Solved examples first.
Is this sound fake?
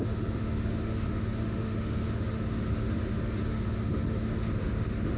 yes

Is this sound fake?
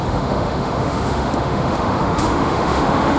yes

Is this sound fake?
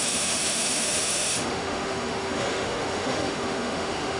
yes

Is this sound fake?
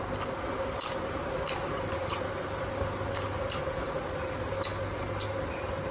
no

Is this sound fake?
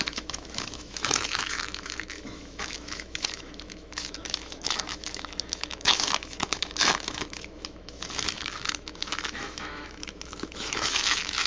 yes